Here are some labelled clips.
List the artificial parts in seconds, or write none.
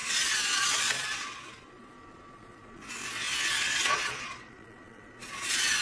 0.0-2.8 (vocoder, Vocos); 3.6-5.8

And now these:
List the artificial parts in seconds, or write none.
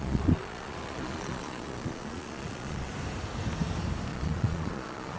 0.0-2.9 (vocoder, Vocos); 4.1-5.2